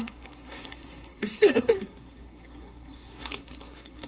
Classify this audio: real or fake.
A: fake